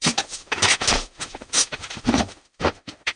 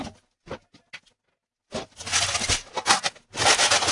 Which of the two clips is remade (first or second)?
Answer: first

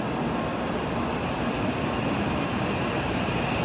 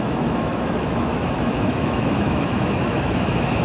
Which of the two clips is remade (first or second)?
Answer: second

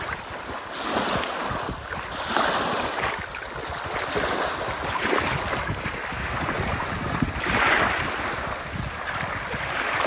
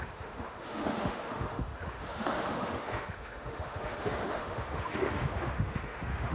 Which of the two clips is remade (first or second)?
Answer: second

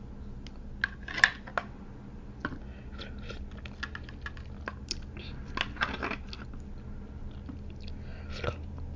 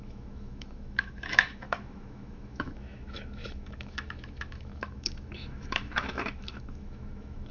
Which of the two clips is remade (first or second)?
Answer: second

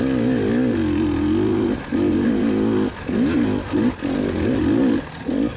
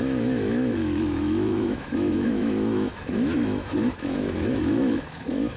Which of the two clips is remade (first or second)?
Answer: second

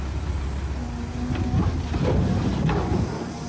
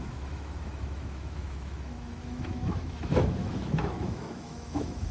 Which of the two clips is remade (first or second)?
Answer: second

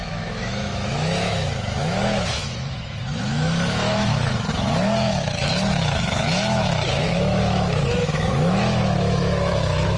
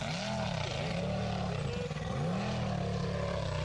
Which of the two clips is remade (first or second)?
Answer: first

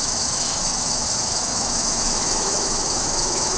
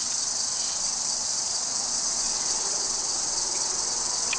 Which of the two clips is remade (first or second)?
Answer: first